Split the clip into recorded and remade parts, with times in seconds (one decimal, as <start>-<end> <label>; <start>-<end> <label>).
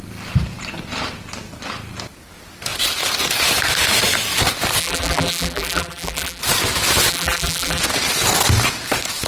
0.0-4.8 recorded; 4.8-6.4 remade; 6.4-7.1 recorded; 7.1-7.8 remade; 7.8-9.3 recorded